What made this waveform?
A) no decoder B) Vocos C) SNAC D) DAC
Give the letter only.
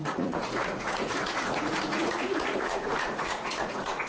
B